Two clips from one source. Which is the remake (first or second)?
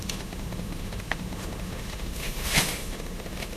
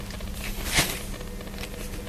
first